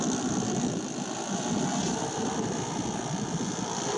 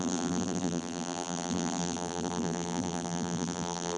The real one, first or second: first